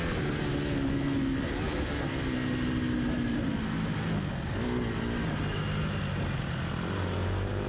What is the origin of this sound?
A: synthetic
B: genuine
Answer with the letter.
B